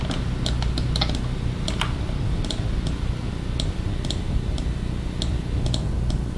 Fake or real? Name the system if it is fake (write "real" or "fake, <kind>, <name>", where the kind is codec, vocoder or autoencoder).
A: real